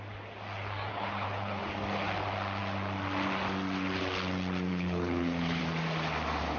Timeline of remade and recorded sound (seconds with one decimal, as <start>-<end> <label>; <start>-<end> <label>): 0.0-0.9 recorded; 0.9-1.6 remade; 1.6-4.7 recorded; 4.7-5.6 remade; 5.6-6.6 recorded

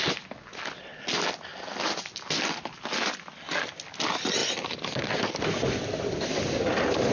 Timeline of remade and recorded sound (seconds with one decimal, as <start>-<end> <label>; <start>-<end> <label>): 0.0-7.1 recorded

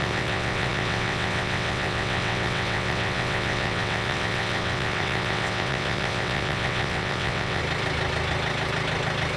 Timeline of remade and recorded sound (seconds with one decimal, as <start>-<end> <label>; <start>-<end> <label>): 0.0-7.6 remade; 7.6-9.4 recorded

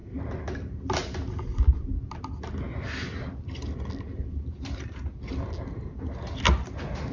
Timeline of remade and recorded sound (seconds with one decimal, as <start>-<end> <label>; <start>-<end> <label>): 0.0-7.1 recorded

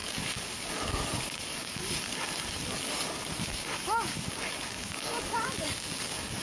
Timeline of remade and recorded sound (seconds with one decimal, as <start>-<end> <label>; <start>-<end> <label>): 0.0-1.9 remade; 1.9-3.5 recorded; 3.5-6.4 remade

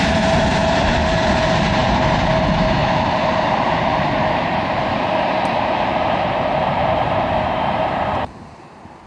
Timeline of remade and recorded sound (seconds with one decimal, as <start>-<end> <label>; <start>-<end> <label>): 0.0-9.1 remade